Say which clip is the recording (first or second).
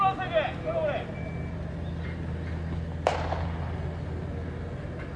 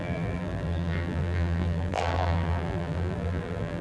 first